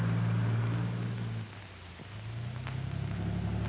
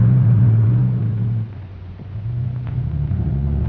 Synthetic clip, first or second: second